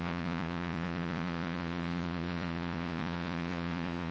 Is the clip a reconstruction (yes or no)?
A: yes